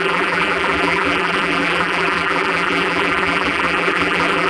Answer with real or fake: fake